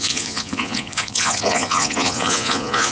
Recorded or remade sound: remade